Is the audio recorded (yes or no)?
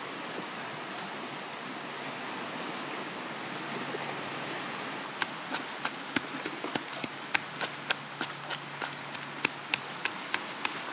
yes